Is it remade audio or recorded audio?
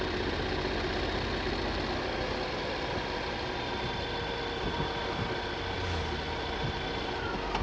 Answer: recorded